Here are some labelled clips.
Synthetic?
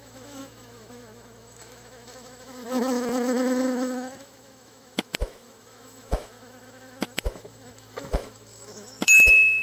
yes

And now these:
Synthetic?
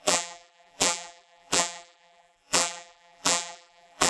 yes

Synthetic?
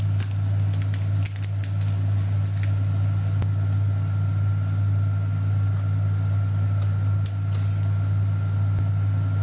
no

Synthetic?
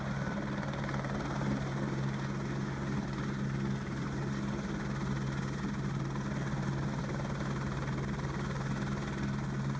no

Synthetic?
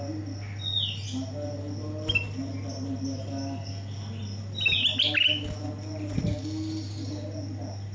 no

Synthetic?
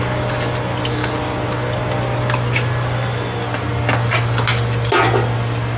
no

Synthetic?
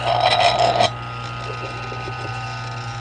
no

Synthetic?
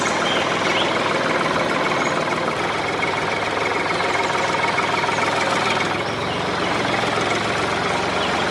no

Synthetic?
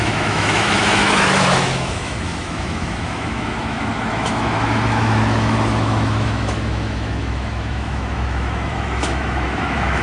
yes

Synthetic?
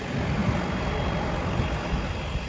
no